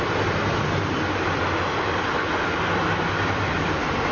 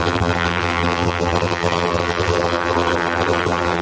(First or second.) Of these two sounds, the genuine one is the first